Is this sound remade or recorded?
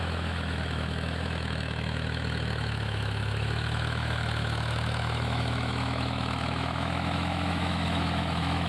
remade